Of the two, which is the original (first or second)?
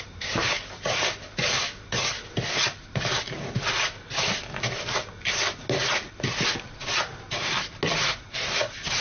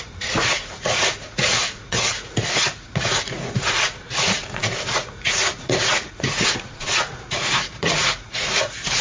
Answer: first